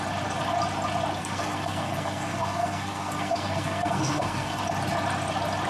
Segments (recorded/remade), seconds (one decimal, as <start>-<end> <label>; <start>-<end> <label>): 0.0-1.2 recorded; 1.2-4.6 remade; 4.6-5.7 recorded